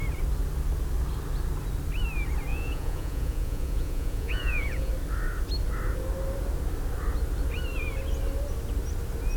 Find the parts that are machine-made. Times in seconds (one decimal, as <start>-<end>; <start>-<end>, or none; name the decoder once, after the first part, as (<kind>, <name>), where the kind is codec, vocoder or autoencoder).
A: 2.5-4.9 (vocoder, Vocos)